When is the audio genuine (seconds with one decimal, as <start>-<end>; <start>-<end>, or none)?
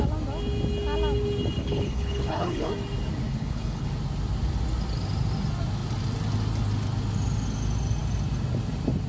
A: 0.0-1.6; 2.7-3.3; 3.9-9.1